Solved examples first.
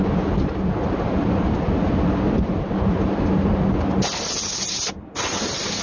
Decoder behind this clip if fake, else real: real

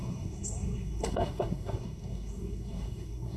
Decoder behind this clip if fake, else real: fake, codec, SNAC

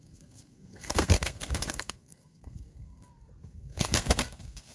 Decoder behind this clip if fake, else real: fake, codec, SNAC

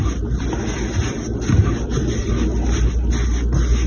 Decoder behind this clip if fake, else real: real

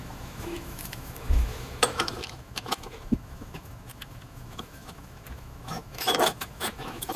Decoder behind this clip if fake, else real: fake, autoencoder, DAC-VAE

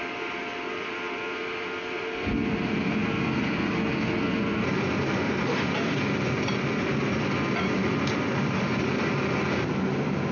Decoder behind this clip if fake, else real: real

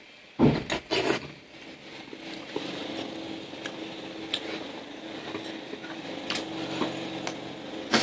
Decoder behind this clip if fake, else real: real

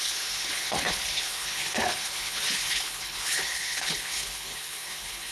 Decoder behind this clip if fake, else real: fake, codec, HILCodec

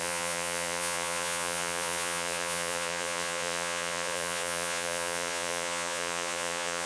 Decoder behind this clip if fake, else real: fake, vocoder, Vocos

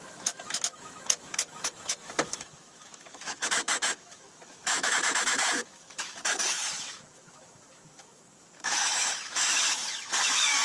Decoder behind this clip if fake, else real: fake, autoencoder, DAC-VAE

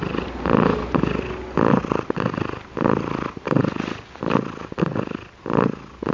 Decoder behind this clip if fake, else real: real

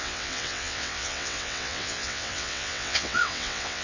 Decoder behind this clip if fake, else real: fake, vocoder, WaveNeXt